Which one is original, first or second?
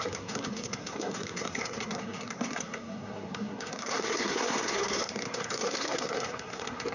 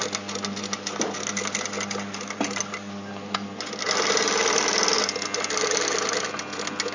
second